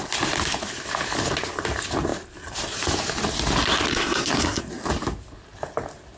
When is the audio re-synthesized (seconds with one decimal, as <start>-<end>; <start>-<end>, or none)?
3.9-4.6